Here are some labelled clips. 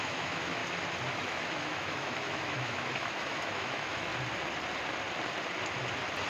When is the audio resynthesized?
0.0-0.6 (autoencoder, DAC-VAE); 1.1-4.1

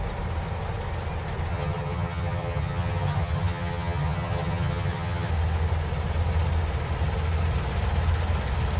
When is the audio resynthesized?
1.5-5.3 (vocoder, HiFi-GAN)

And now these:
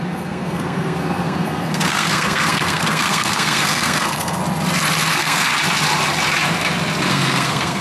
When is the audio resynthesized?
0.0-4.4 (codec, SNAC); 5.1-5.5; 7.1-7.8

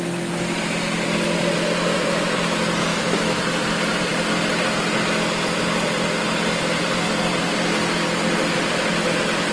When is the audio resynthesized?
2.9-3.4 (autoencoder, DAC-VAE)